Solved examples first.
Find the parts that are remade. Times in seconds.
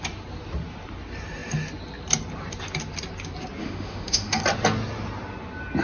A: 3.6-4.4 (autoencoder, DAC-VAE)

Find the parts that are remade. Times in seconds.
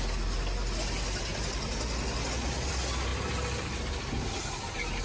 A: none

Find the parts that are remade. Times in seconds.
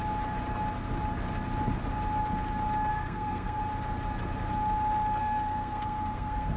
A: 2.9-3.6 (codec, SNAC); 5.2-6.6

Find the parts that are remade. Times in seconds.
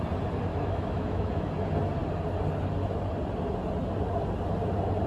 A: 0.5-1.5 (autoencoder, DAC-VAE)